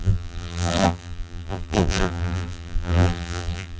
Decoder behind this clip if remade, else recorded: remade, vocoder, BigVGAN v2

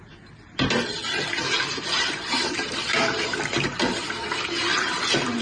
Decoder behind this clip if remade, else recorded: recorded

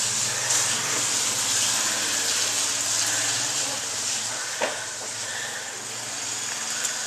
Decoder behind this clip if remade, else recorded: recorded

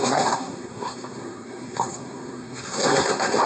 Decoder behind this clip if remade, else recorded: remade, codec, SNAC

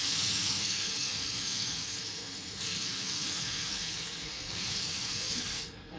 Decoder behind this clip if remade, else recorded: remade, codec, SNAC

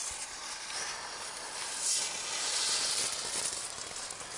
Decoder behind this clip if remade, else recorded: recorded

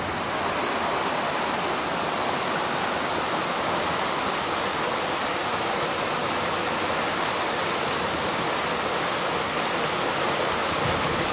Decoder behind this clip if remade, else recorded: recorded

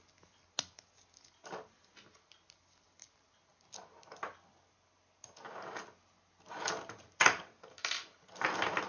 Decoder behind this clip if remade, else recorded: recorded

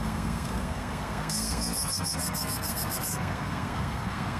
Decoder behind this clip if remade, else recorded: remade, codec, SNAC